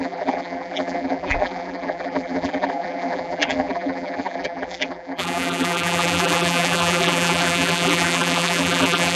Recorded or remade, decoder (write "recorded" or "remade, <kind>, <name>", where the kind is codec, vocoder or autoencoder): remade, vocoder, BigVGAN v2